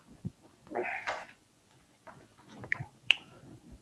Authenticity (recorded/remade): remade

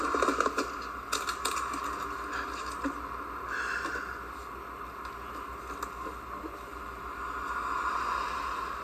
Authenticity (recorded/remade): recorded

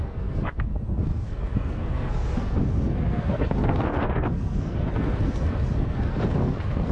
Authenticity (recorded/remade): remade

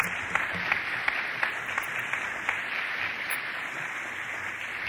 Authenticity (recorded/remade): recorded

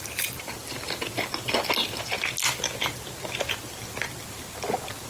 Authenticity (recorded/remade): recorded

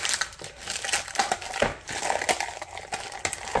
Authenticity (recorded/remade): recorded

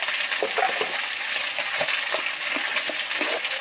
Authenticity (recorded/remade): recorded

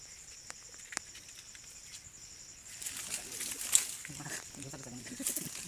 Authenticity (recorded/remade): recorded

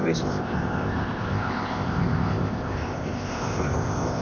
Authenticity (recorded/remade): remade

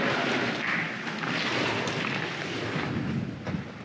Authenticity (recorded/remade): recorded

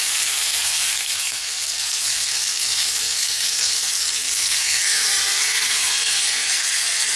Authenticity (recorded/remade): remade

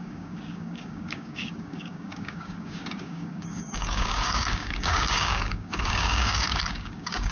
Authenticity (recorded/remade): remade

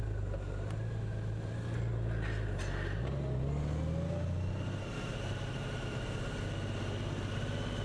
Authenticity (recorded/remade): recorded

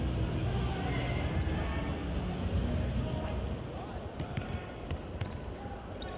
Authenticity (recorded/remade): recorded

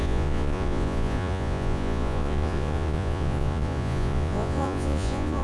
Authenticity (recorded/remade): remade